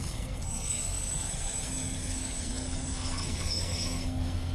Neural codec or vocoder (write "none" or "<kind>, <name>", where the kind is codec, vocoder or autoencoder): codec, SNAC